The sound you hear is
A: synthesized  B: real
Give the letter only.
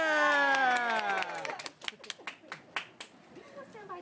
B